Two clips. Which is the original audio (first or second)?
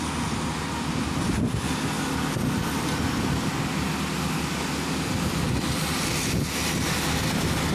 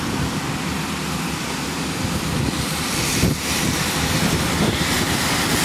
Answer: first